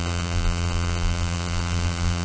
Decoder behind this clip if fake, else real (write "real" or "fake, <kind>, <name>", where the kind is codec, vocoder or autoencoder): fake, vocoder, BigVGAN v2